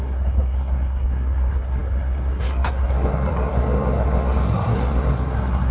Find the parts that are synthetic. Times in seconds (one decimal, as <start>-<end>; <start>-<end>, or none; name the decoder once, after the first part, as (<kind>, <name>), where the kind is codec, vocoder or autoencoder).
0.0-5.7 (codec, SNAC)